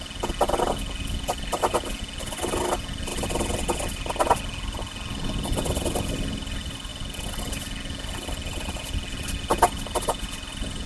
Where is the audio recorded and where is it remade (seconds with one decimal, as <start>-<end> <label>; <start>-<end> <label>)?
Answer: 0.0-10.9 recorded